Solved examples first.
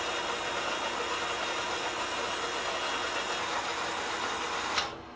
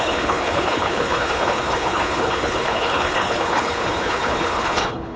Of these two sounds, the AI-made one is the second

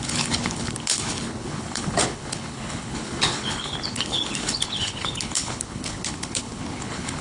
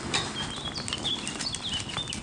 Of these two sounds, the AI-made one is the first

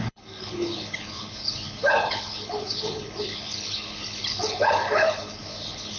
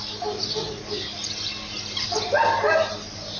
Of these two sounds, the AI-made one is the first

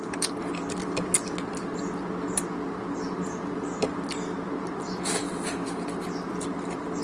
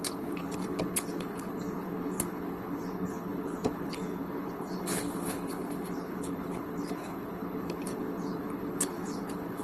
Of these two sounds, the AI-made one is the second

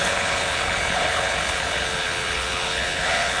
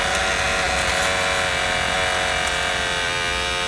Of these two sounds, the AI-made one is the first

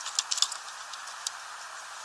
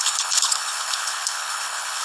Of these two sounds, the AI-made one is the second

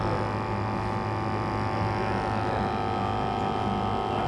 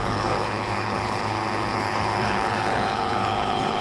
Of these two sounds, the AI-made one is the second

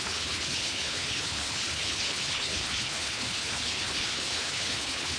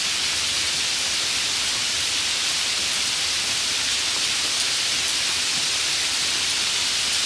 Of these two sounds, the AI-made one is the first